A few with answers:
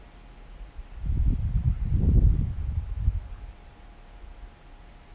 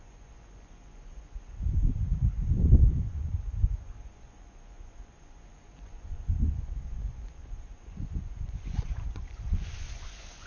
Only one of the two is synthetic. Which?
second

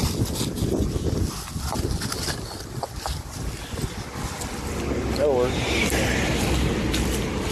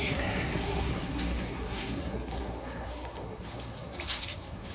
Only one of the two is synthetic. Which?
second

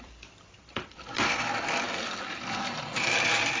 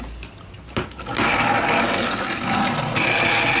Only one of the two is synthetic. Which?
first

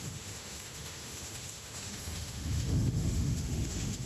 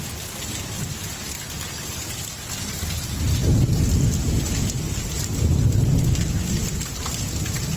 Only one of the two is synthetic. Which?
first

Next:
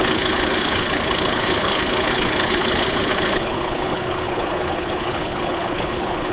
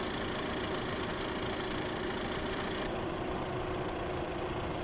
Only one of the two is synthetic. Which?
first